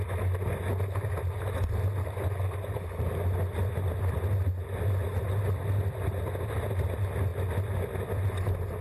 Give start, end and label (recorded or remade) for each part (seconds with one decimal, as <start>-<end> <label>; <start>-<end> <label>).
0.0-8.8 recorded